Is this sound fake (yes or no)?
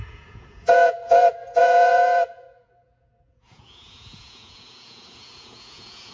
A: yes